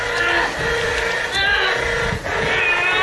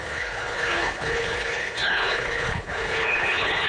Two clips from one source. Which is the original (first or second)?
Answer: first